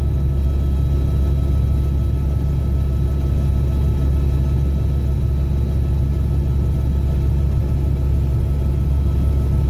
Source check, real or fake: real